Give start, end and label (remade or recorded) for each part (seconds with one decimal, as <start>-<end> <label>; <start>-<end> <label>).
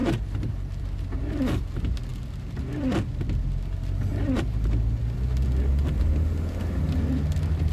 0.0-0.8 remade; 0.8-7.7 recorded